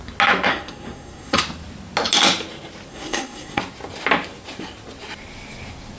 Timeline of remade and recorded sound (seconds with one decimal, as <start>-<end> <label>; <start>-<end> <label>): 0.0-0.5 recorded; 0.5-1.4 remade; 1.4-2.9 recorded; 2.9-3.6 remade; 3.6-6.0 recorded